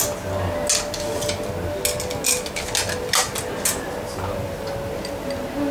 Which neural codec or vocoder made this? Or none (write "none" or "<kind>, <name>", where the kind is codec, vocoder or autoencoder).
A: none